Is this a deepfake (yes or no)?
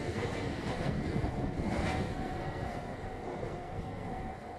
yes